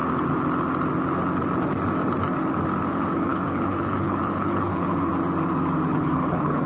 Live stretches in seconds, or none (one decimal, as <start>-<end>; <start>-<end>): 0.0-2.9; 5.1-5.9